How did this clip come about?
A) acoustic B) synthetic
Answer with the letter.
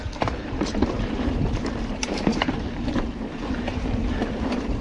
B